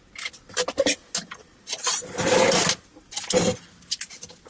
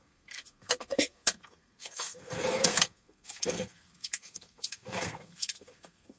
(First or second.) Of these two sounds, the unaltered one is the first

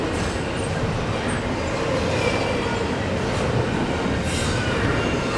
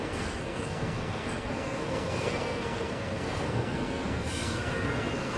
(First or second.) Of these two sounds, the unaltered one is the first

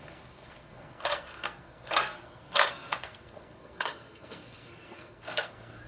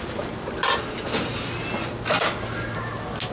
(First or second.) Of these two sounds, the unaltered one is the second